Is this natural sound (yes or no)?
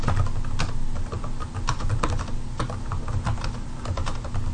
yes